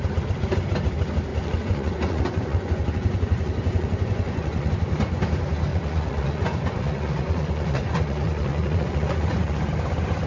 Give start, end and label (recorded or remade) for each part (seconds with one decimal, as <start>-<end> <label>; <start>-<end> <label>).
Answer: 0.0-1.3 recorded; 1.3-4.7 remade; 4.7-5.7 recorded; 5.7-9.7 remade; 9.7-10.3 recorded